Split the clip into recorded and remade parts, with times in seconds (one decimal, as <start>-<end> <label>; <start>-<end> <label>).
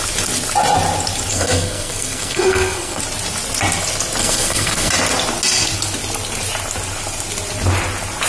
0.0-1.3 recorded; 1.3-3.0 remade; 3.0-4.2 recorded; 4.2-4.9 remade; 4.9-8.3 recorded